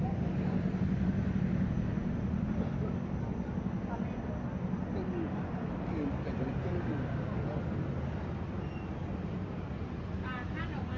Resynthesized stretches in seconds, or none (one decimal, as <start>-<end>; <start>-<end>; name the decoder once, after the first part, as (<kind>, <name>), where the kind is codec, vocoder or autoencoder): none